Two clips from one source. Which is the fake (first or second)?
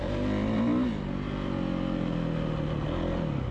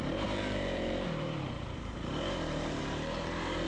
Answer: second